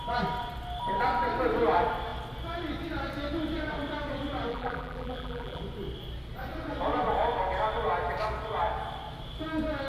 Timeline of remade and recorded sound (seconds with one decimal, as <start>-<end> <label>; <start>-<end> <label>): 0.0-4.5 recorded; 4.5-5.6 remade; 5.6-9.9 recorded